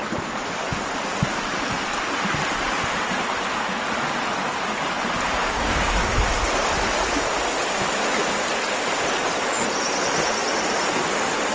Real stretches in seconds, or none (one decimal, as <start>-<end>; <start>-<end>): 0.0-5.4; 6.1-11.5